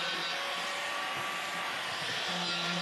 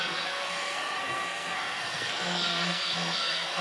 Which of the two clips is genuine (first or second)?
first